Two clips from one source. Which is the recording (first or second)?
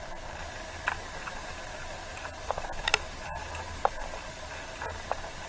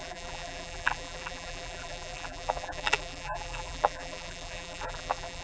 first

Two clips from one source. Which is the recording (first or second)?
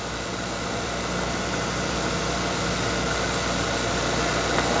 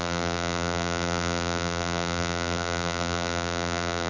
first